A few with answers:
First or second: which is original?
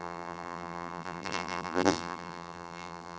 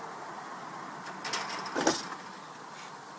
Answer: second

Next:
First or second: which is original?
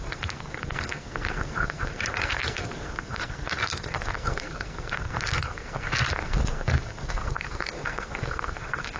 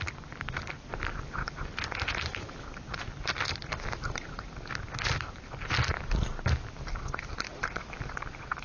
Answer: second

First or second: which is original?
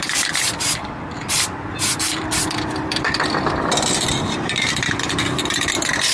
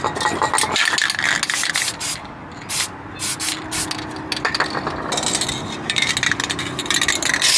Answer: second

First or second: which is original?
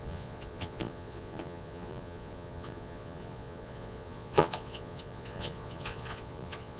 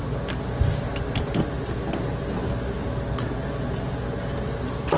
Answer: second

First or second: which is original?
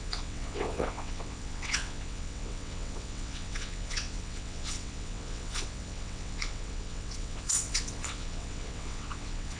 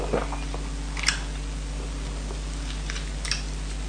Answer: second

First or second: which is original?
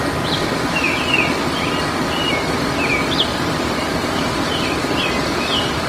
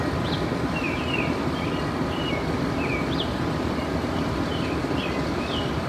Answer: first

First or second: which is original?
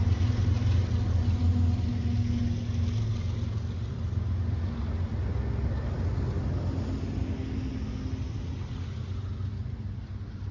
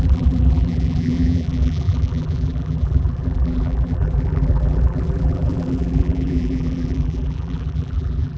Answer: first